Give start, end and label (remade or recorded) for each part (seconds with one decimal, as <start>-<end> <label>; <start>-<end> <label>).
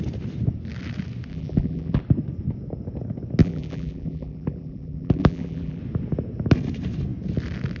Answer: 0.0-1.3 recorded; 1.3-2.0 remade; 2.0-3.4 recorded; 3.4-5.8 remade; 5.8-7.8 recorded